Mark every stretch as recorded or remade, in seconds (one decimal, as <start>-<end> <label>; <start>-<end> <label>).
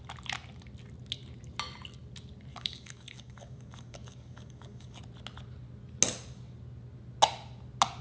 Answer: 0.0-2.5 recorded; 2.5-5.0 remade; 5.0-8.0 recorded